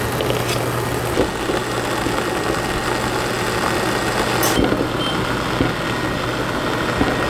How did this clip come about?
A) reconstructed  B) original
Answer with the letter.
B